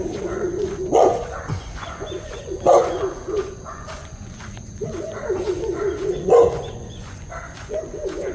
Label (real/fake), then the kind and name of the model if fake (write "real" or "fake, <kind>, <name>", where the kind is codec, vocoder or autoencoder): fake, vocoder, Vocos